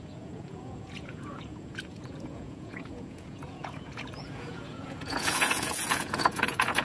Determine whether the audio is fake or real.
fake